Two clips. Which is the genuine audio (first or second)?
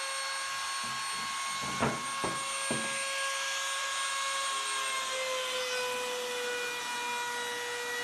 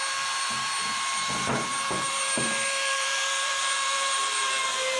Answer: first